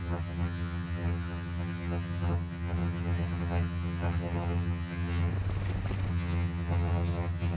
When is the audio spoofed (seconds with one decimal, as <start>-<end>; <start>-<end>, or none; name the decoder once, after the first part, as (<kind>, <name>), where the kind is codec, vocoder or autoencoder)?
0.0-5.3 (vocoder, HiFi-GAN); 6.1-7.6